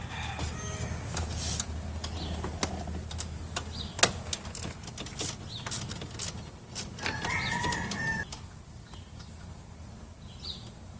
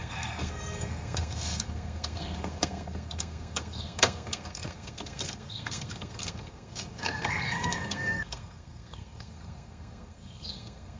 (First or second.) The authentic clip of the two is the first